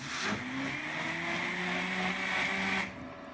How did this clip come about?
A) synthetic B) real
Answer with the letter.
B